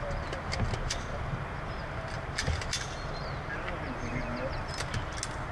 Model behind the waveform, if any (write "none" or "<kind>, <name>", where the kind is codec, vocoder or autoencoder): none